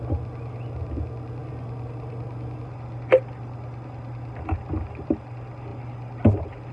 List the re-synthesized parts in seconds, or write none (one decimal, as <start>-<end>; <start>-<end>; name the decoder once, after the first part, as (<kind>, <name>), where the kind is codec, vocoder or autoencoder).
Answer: none